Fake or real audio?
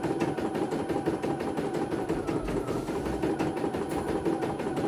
real